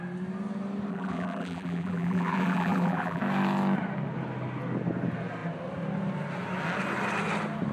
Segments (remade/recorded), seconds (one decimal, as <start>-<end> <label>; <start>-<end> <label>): 0.0-0.9 recorded; 0.9-3.2 remade; 3.2-7.7 recorded